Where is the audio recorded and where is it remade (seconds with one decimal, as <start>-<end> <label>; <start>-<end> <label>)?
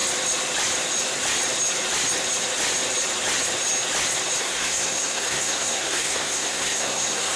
0.0-4.4 recorded; 4.4-7.4 remade